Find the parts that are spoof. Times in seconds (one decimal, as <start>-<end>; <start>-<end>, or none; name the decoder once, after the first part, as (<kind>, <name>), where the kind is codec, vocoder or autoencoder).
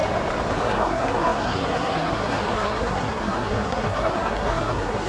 0.5-5.1 (codec, SNAC)